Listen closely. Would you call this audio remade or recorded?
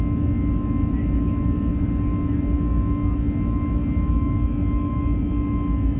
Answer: recorded